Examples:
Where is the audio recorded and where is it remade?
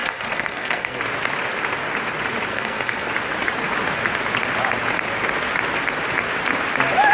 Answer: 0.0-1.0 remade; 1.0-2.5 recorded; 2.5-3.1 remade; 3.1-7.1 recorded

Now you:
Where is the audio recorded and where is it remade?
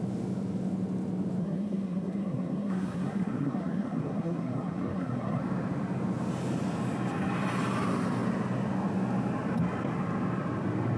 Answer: 0.0-1.4 recorded; 1.4-5.4 remade; 5.4-11.0 recorded